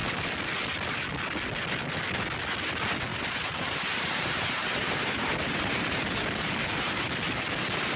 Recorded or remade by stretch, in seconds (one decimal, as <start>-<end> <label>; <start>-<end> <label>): 0.0-3.1 recorded; 3.1-6.0 remade; 6.0-8.0 recorded